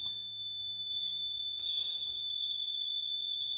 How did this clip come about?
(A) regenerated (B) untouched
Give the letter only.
A